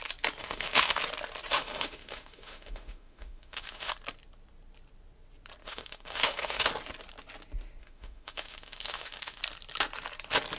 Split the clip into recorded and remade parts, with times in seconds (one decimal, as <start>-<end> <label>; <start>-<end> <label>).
0.0-0.4 recorded; 0.4-1.0 remade; 1.0-1.5 recorded; 1.5-3.9 remade; 3.9-5.6 recorded; 5.6-6.7 remade; 6.7-7.8 recorded; 7.8-9.4 remade; 9.4-10.6 recorded